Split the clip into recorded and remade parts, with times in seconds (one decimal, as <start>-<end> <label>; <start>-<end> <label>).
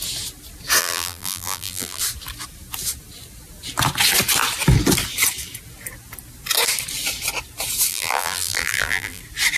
0.0-0.8 recorded; 0.8-2.0 remade; 2.0-7.9 recorded; 7.9-9.2 remade; 9.2-9.6 recorded